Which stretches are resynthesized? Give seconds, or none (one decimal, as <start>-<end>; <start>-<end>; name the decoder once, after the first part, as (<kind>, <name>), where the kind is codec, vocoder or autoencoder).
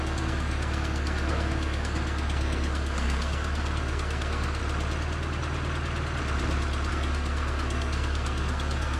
0.0-4.6 (codec, SNAC); 6.9-9.0